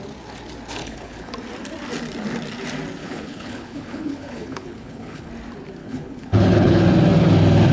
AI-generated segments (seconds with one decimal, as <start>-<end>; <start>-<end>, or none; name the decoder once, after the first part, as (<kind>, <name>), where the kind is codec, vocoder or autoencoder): 0.8-1.3 (codec, HILCodec); 3.0-5.3; 5.8-6.8